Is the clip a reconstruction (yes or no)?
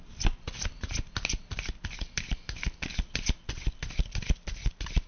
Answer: no